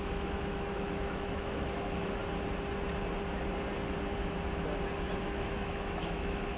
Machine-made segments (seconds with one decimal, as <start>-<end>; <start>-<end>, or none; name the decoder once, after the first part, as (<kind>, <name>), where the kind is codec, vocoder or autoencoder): 0.0-2.2 (autoencoder, DAC-VAE); 5.2-6.6